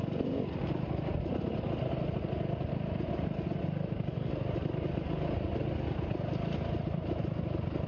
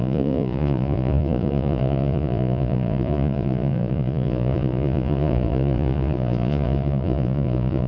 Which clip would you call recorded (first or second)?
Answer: first